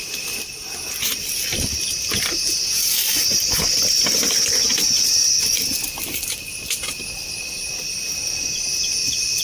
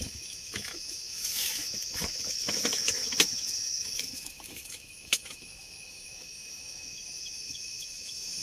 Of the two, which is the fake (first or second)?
second